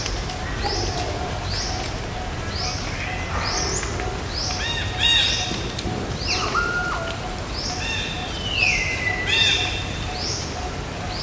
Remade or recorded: recorded